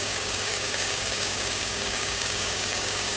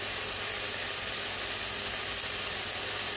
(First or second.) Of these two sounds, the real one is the second